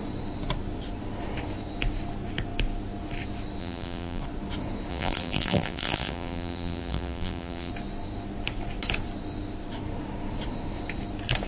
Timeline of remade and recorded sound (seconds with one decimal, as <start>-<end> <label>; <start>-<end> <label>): 0.0-3.6 recorded; 3.6-4.2 remade; 4.2-4.9 recorded; 4.9-7.7 remade; 7.7-11.5 recorded